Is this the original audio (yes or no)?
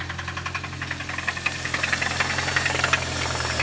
yes